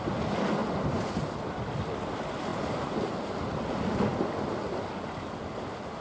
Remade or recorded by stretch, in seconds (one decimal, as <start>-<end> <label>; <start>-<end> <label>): 0.0-2.5 recorded; 2.5-3.1 remade; 3.1-6.0 recorded